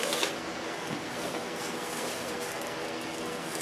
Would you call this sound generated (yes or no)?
yes